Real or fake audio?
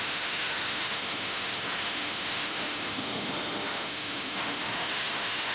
fake